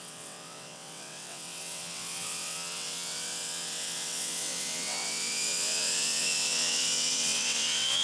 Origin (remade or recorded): remade